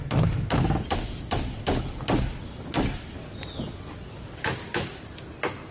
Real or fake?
real